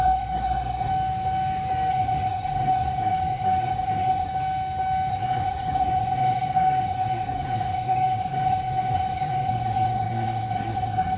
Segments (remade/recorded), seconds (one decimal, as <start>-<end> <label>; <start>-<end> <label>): 0.0-0.9 remade; 0.9-1.9 recorded; 1.9-4.3 remade; 4.3-5.1 recorded; 5.1-11.2 remade